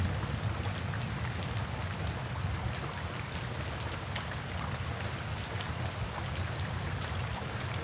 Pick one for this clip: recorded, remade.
recorded